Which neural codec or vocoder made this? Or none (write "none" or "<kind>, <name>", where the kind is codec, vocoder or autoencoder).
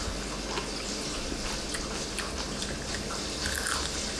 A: none